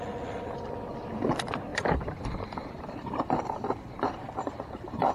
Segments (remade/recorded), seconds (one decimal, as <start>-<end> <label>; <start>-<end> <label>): 0.0-1.7 recorded; 1.7-5.1 remade